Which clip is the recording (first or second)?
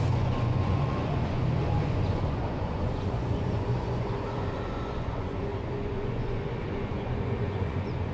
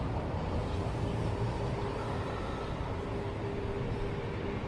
second